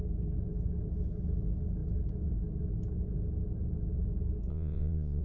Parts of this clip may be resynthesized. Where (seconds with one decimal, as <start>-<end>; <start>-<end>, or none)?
4.5-5.2